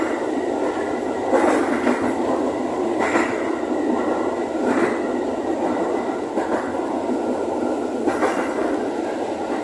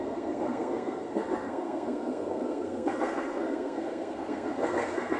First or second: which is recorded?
first